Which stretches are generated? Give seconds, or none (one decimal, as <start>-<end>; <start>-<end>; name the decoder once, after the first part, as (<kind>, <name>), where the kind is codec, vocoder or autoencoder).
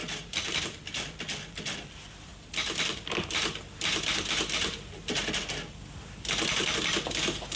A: 0.0-0.6 (vocoder, BigVGAN v2); 2.3-5.0